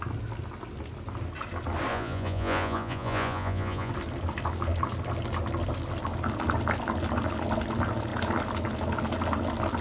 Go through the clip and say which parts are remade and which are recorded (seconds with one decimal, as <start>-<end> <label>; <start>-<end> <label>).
0.0-1.9 recorded; 1.9-3.9 remade; 3.9-9.8 recorded